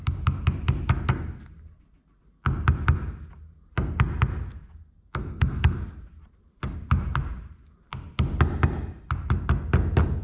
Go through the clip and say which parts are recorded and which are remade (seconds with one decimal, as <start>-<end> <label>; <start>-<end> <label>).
0.0-5.2 recorded; 5.2-5.8 remade; 5.8-10.2 recorded